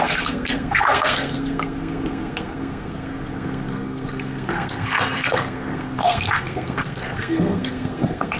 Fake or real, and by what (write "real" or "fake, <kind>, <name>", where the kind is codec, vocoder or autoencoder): fake, codec, SNAC